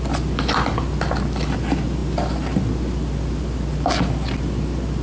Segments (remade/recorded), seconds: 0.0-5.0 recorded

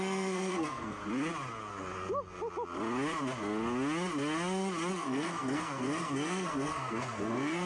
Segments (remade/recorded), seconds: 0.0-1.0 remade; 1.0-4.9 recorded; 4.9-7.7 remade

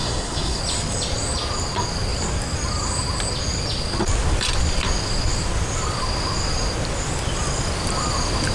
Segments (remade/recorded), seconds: 0.0-0.6 remade; 0.6-8.5 recorded

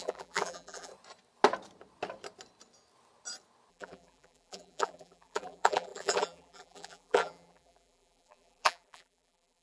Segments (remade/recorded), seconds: 0.0-0.9 remade; 0.9-3.7 recorded; 3.7-9.6 remade

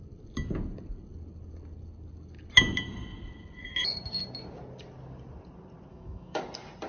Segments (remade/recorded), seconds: 0.0-5.9 recorded; 5.9-6.4 remade; 6.4-6.9 recorded

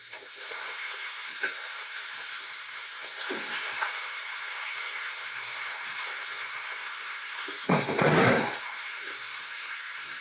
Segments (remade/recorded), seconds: 0.0-10.2 remade

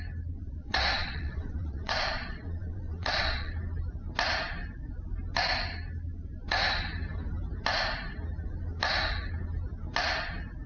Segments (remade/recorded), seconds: 0.0-0.4 recorded; 0.4-3.5 remade; 3.5-10.7 recorded